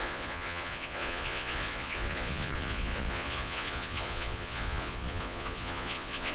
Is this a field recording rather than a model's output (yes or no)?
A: no